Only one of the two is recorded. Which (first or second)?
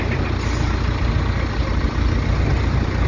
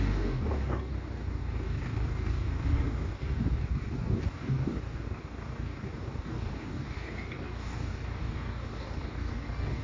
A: first